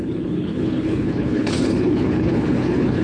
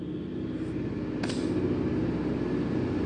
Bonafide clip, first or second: second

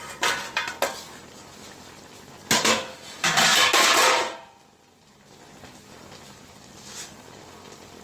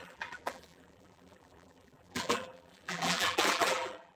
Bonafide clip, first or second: first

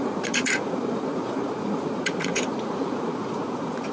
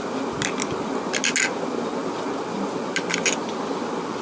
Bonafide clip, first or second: second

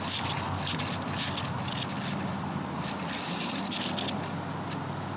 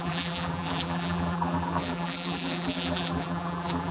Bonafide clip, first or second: first